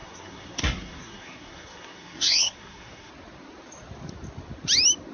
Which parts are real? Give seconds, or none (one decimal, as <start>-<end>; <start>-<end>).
3.1-5.1